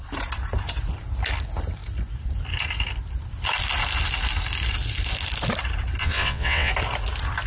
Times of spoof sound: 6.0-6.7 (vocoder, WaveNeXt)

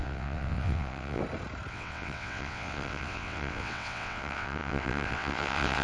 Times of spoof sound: 0.0-1.2 (vocoder, WaveNeXt); 1.7-5.8